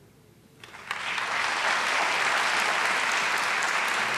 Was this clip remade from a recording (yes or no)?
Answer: no